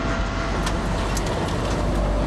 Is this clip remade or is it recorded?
recorded